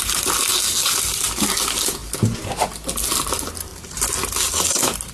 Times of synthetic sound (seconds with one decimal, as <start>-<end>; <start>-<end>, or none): none